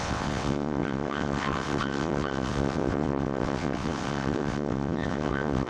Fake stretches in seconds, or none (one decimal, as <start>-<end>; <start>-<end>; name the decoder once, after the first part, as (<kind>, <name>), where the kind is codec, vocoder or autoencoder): 0.0-5.7 (vocoder, WaveNeXt)